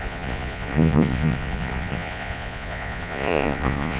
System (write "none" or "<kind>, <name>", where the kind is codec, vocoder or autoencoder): vocoder, Vocos